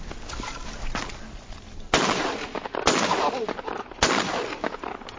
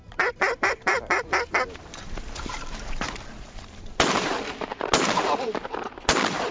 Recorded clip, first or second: first